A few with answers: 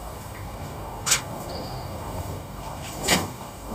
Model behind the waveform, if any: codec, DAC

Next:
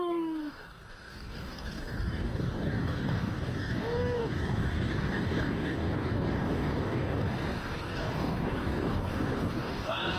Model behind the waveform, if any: codec, DAC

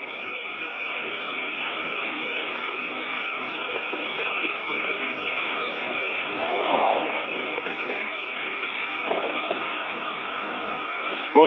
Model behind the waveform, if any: codec, DAC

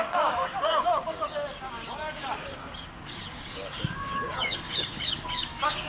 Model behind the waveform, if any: codec, DAC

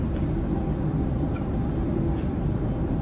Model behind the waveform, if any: none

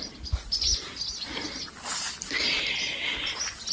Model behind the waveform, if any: none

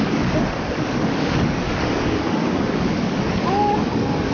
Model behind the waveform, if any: codec, DAC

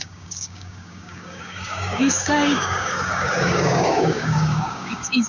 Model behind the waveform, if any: codec, DAC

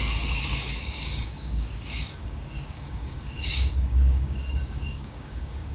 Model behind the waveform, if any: codec, DAC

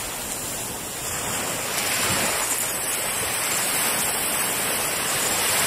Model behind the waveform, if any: none